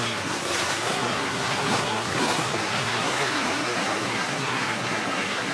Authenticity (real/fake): fake